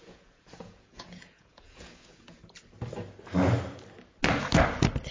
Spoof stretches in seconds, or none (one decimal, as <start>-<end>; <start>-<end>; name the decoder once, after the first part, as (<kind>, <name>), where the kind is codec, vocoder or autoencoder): 0.0-2.4 (vocoder, Vocos)